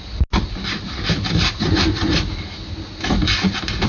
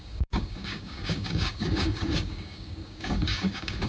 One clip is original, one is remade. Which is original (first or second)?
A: first